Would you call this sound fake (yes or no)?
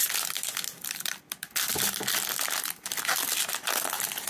no